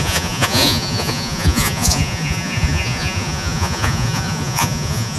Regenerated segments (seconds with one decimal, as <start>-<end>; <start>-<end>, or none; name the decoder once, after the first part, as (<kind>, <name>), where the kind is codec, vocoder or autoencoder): 0.0-5.2 (vocoder, Vocos)